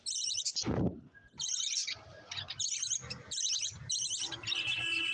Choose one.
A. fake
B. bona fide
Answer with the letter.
B